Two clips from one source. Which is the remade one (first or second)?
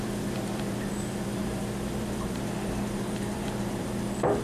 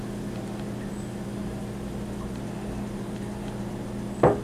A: first